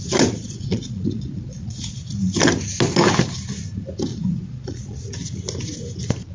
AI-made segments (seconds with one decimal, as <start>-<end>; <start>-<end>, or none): 0.4-2.0; 4.1-5.0